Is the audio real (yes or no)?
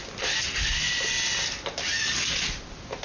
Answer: yes